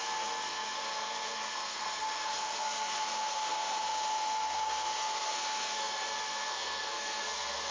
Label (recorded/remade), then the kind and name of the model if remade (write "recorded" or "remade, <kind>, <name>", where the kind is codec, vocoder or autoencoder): remade, codec, SNAC